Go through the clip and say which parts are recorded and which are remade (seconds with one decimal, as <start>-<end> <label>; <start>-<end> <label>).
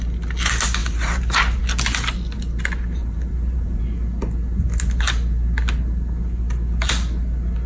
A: 0.0-0.8 recorded; 0.8-1.6 remade; 1.6-3.0 recorded; 3.0-3.8 remade; 3.8-7.7 recorded